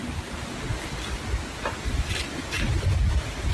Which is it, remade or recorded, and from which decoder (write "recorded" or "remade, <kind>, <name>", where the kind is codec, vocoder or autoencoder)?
recorded